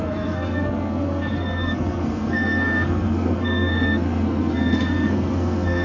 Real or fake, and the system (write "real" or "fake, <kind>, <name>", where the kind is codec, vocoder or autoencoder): fake, codec, SNAC